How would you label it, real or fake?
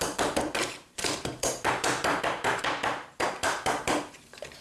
fake